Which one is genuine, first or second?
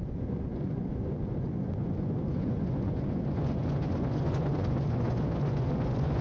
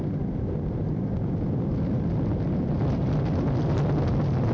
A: second